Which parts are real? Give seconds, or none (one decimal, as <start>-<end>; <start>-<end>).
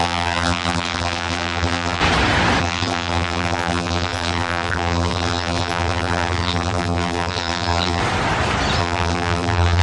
2.0-2.6; 8.0-8.8